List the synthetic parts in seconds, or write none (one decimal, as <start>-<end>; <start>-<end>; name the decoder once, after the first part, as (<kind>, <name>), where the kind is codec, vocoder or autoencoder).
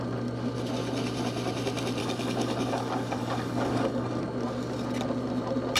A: 2.0-4.2 (codec, DAC)